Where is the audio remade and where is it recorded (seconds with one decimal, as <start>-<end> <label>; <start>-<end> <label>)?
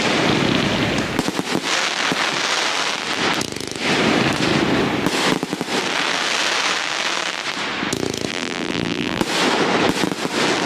0.0-8.3 recorded; 8.3-9.2 remade; 9.2-10.7 recorded